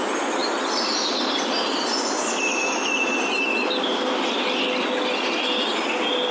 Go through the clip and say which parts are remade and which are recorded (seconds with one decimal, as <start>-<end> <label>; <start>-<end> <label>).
0.0-6.3 recorded